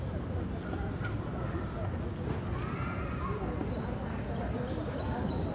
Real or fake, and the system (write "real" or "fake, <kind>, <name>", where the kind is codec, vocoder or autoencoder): real